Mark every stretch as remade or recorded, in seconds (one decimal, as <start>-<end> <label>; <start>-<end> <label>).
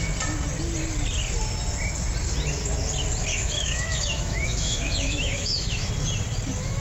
0.0-3.3 recorded; 3.3-5.9 remade; 5.9-6.8 recorded